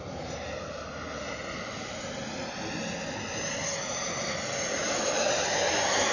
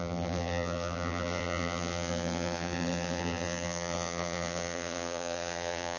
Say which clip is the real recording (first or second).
first